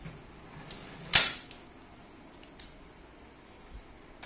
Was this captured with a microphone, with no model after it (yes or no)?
yes